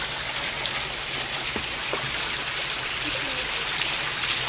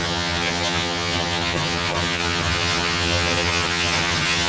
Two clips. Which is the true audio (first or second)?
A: first